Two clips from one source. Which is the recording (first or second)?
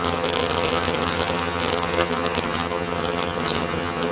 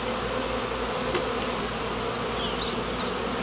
second